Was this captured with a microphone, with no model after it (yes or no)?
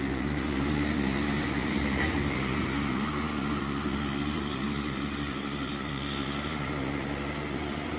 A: no